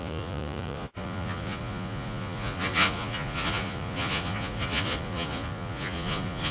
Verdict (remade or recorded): remade